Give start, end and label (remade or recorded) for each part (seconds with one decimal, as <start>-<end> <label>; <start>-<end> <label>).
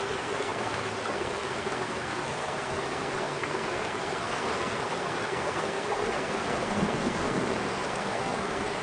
0.0-8.8 remade